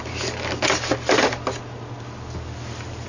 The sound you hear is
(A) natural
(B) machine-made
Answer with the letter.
A